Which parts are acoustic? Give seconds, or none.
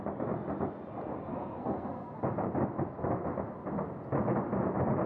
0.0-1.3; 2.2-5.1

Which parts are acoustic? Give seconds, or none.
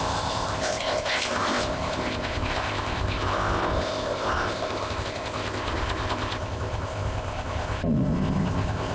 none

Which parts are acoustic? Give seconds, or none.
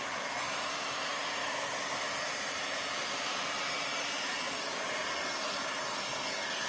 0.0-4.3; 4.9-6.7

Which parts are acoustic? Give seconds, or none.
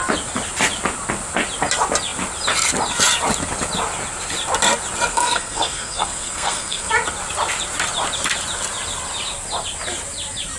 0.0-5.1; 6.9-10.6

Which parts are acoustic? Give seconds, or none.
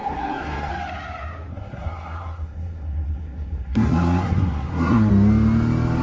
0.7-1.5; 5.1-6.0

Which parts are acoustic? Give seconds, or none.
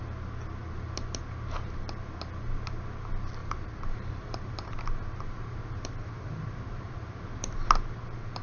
0.0-3.4; 7.2-8.4